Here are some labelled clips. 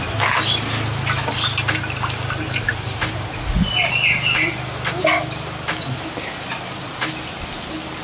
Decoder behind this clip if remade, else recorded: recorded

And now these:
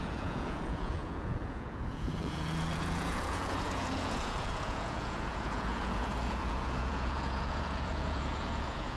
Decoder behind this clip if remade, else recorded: remade, vocoder, Vocos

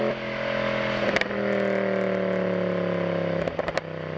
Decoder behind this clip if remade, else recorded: recorded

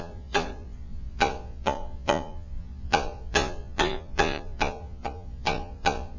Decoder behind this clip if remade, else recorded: remade, vocoder, Vocos